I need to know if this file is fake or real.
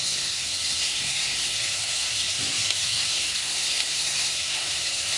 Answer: fake